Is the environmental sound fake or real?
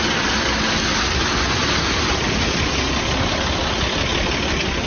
real